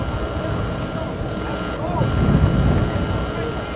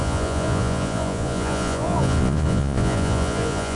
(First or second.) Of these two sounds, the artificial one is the second